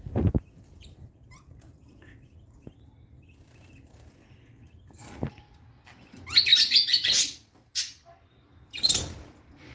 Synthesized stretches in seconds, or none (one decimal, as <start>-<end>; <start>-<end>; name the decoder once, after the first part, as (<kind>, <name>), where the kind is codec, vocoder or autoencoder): none